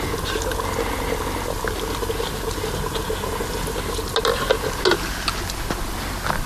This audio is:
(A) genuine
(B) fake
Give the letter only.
A